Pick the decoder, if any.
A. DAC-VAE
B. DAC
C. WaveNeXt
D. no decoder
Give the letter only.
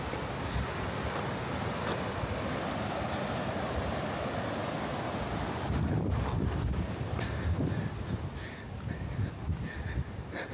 D